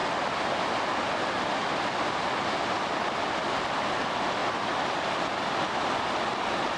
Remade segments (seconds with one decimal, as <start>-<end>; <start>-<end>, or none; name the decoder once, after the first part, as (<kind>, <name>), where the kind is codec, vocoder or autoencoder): none